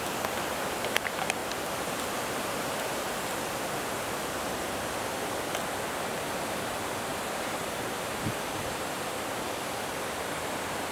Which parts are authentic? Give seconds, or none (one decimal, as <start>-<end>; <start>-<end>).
1.4-6.0